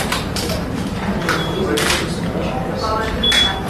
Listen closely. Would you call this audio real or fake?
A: fake